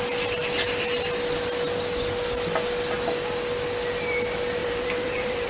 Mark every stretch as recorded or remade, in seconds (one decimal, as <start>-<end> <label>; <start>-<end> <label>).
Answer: 0.0-4.6 recorded; 4.6-5.5 remade